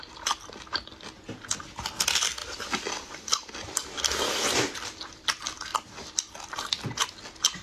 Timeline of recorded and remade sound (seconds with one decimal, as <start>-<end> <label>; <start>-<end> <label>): 0.0-2.4 recorded; 2.4-5.1 remade; 5.1-5.7 recorded; 5.7-6.2 remade; 6.2-7.6 recorded